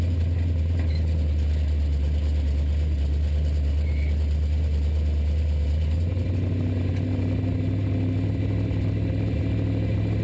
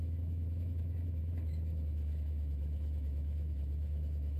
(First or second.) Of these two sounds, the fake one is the second